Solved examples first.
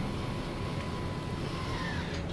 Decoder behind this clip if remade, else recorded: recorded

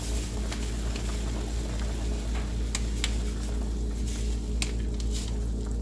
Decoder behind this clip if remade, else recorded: recorded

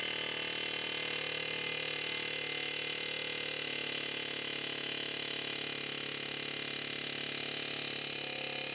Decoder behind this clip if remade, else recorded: recorded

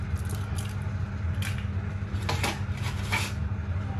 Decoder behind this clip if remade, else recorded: recorded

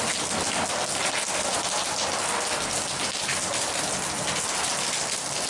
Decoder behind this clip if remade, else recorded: recorded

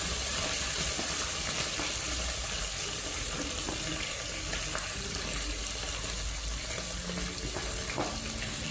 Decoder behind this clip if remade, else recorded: recorded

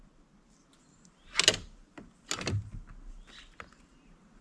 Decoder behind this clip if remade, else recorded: recorded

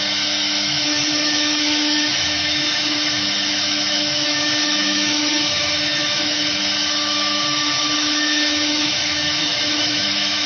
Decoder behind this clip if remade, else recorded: remade, autoencoder, DAC-VAE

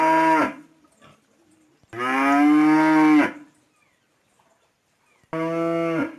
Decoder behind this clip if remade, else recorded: recorded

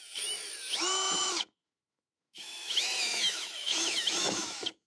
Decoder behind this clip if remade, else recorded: remade, autoencoder, DAC-VAE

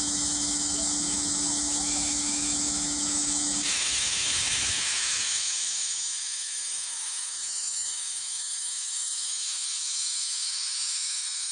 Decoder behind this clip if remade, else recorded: remade, autoencoder, DAC-VAE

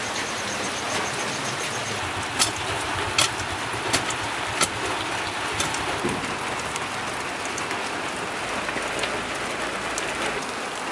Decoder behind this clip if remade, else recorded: recorded